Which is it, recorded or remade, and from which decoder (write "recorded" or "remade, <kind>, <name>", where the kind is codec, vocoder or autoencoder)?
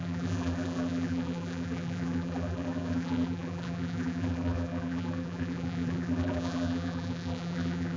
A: remade, vocoder, BigVGAN v2